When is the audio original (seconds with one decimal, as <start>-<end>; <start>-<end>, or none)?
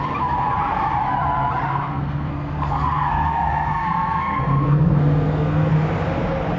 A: 0.0-1.7; 5.7-6.6